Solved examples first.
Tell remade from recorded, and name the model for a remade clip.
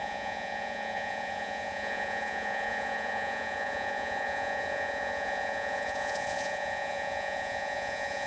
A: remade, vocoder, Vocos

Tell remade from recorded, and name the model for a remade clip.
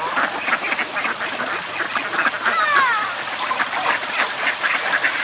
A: recorded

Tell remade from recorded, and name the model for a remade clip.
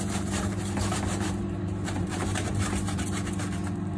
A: remade, vocoder, BigVGAN v2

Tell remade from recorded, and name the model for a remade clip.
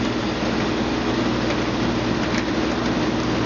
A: recorded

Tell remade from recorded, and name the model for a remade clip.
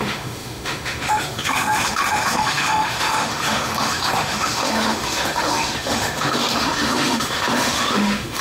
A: remade, autoencoder, DAC-VAE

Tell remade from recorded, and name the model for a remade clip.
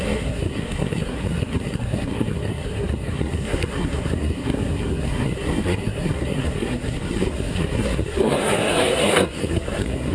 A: remade, codec, SNAC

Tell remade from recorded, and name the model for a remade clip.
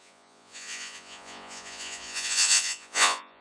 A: remade, vocoder, Vocos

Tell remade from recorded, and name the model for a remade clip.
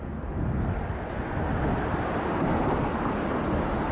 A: recorded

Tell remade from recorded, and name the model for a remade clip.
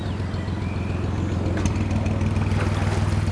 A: recorded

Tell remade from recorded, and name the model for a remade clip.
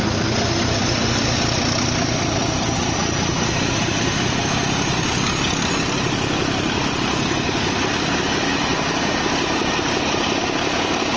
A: recorded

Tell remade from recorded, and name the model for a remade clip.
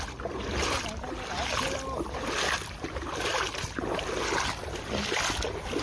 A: recorded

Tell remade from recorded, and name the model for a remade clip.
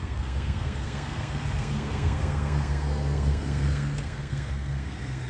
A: remade, codec, SNAC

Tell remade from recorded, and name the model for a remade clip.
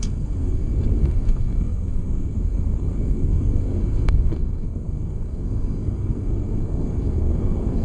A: remade, codec, SNAC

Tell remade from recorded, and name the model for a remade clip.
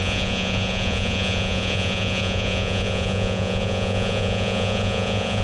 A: remade, vocoder, Vocos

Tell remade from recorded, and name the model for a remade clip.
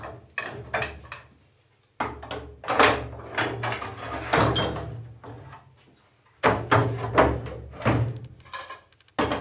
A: recorded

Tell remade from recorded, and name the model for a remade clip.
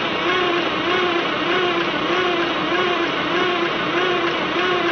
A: recorded